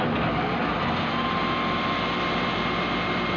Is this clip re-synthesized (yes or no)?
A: no